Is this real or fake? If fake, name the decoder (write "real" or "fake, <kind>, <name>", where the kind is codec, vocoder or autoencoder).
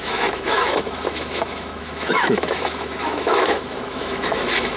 fake, autoencoder, DAC-VAE